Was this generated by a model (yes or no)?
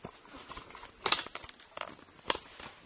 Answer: no